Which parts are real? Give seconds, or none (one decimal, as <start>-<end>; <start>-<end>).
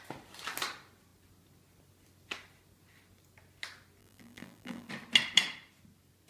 0.0-4.0; 4.9-6.3